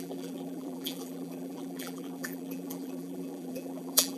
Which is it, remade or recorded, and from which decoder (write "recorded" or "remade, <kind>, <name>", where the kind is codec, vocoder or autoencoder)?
remade, vocoder, BigVGAN v2